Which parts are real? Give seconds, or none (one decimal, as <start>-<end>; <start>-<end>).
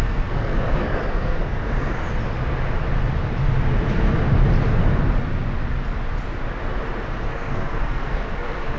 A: 2.0-7.3